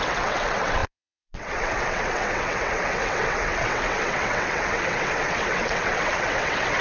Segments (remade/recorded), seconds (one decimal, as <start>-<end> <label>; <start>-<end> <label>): 0.0-6.8 remade